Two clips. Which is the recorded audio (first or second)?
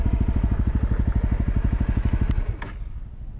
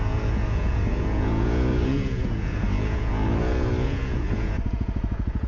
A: first